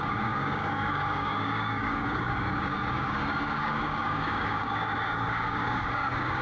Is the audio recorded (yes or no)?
no